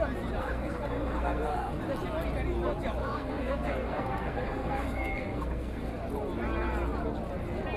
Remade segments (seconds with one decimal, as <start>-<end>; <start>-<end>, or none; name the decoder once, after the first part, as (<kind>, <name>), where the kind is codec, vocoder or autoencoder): 0.4-1.8 (codec, SNAC); 3.0-5.9